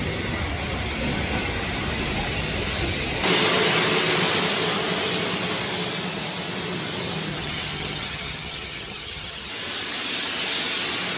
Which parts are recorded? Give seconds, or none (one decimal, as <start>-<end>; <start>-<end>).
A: 0.0-7.3; 9.5-11.2